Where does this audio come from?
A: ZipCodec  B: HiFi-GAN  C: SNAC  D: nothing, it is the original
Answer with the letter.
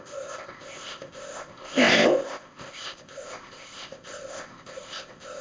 A